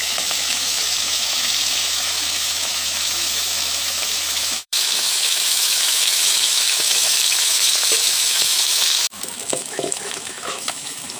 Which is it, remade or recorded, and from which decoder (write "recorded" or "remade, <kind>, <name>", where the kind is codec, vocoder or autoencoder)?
remade, autoencoder, DAC-VAE